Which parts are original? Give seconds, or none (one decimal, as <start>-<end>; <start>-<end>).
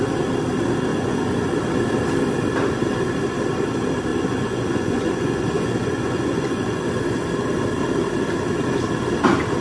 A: 0.0-0.9; 1.5-4.1; 7.3-9.6